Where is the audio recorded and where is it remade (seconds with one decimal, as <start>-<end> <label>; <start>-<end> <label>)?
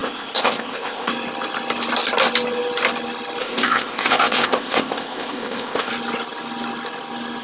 0.0-1.1 remade; 1.1-3.4 recorded; 3.4-5.9 remade; 5.9-7.4 recorded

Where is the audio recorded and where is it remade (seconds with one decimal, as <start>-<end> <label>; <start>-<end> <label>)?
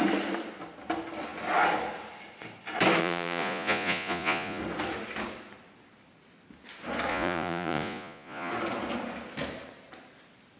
0.0-3.0 recorded; 3.0-4.6 remade; 4.6-7.1 recorded; 7.1-8.5 remade; 8.5-10.6 recorded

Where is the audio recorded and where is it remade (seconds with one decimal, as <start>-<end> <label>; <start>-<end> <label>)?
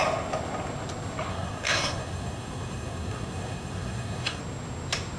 0.0-1.3 recorded; 1.3-4.4 remade; 4.4-5.2 recorded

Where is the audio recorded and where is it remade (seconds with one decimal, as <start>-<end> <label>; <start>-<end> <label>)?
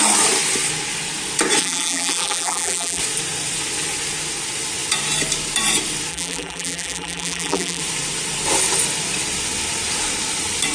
0.0-1.6 recorded; 1.6-3.0 remade; 3.0-6.1 recorded; 6.1-7.8 remade; 7.8-10.7 recorded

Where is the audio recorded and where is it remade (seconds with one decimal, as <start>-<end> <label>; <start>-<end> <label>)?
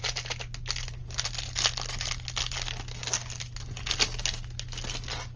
0.0-5.4 recorded